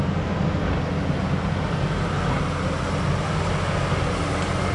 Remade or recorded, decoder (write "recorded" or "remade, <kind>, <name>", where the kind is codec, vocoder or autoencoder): recorded